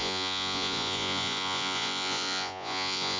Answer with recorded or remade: remade